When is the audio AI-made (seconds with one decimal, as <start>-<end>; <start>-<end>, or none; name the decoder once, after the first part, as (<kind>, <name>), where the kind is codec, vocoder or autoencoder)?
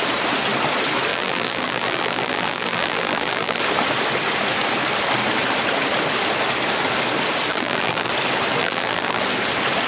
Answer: 1.1-3.6 (vocoder, BigVGAN v2); 7.5-8.1; 8.6-9.2